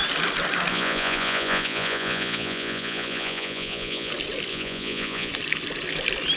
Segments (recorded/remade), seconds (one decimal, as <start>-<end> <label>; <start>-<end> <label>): 0.0-0.7 recorded; 0.7-4.1 remade; 4.1-4.5 recorded; 4.5-5.3 remade; 5.3-6.4 recorded

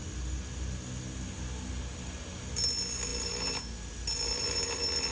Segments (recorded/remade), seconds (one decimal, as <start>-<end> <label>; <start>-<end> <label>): 0.0-5.1 recorded

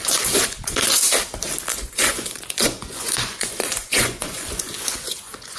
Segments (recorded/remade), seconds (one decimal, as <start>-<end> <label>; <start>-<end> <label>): 0.0-1.0 remade; 1.0-1.7 recorded; 1.7-5.6 remade

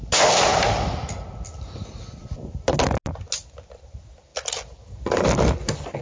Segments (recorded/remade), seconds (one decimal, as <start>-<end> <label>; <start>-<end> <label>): 0.0-6.0 recorded

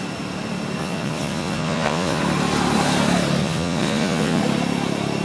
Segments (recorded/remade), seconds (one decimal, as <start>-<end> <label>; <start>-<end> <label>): 0.0-0.8 recorded; 0.8-2.2 remade; 2.2-3.4 recorded; 3.4-4.4 remade; 4.4-5.2 recorded

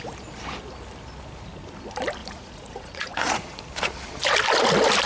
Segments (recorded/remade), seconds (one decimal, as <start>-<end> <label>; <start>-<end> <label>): 0.0-2.2 recorded; 2.2-3.6 remade; 3.6-5.1 recorded